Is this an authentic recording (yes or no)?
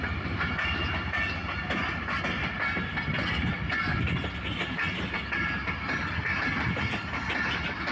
yes